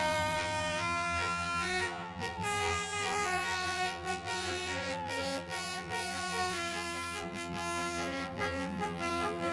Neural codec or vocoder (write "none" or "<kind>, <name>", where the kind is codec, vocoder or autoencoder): vocoder, BigVGAN v2